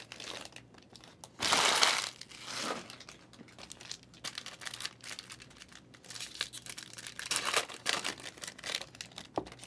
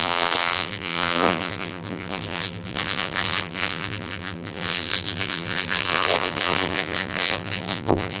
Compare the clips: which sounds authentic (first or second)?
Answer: first